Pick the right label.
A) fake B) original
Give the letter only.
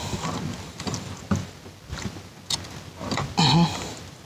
B